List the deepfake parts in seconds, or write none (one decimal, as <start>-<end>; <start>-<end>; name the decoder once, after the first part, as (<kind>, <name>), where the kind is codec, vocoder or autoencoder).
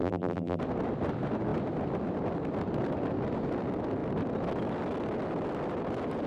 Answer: 0.0-0.6 (vocoder, BigVGAN v2)